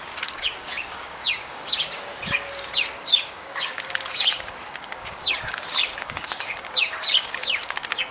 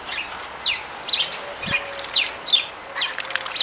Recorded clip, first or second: second